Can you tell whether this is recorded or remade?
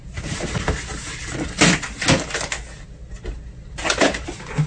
recorded